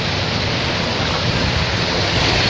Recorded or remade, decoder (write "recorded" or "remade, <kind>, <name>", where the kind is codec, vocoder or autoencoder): recorded